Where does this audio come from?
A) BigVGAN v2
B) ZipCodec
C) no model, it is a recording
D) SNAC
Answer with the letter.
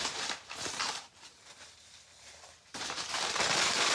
A